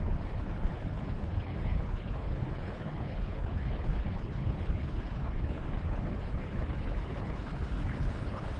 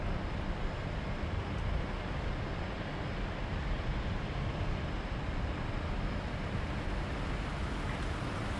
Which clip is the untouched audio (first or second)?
second